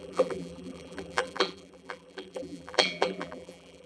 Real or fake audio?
fake